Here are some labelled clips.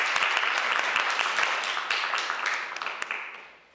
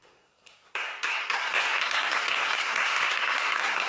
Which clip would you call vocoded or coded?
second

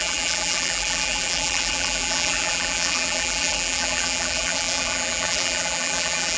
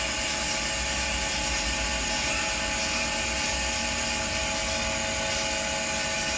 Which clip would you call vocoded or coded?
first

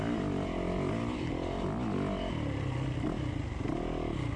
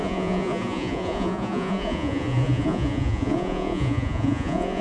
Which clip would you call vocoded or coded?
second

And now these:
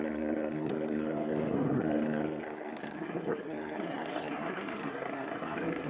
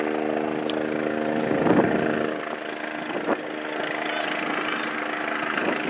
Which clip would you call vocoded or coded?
first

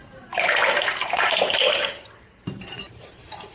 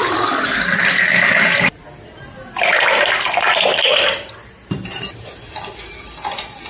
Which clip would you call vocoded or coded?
first